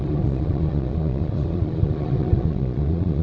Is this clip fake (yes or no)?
yes